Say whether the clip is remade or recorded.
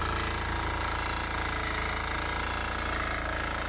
recorded